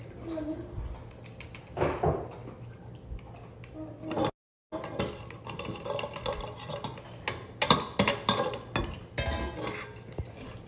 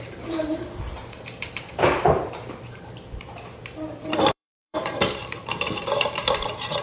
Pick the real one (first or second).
first